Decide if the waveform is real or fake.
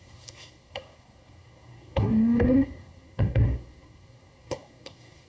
fake